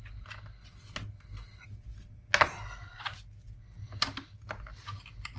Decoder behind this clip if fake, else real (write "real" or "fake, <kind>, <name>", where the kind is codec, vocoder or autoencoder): real